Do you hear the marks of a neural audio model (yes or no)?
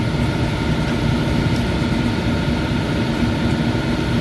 no